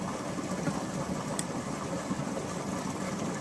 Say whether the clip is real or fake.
real